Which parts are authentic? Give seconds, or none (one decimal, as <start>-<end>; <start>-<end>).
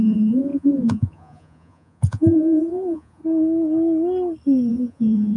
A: 3.2-4.7